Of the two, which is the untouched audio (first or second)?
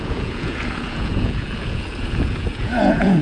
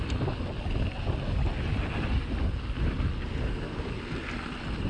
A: second